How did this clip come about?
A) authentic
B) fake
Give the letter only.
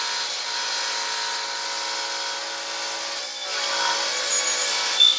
A